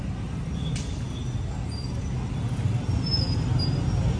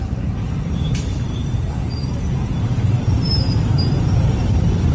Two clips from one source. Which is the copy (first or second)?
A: second